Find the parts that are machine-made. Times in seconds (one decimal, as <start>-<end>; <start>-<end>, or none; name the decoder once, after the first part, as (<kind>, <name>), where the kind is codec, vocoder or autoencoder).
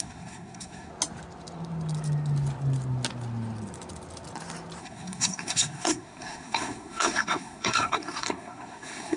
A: 0.0-0.9 (codec, SNAC); 4.8-9.2